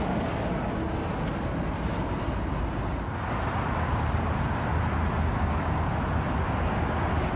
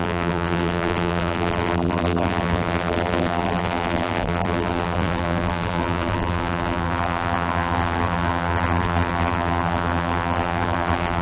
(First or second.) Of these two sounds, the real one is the first